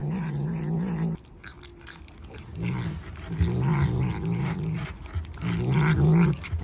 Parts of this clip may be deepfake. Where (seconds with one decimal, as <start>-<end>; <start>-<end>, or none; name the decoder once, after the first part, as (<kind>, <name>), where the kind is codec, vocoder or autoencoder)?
0.0-0.6 (vocoder, BigVGAN v2)